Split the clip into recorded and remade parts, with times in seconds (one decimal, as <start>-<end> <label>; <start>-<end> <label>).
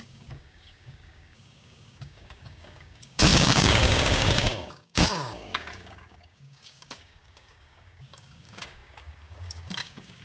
0.0-10.2 remade